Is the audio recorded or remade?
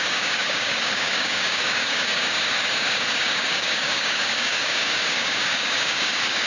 remade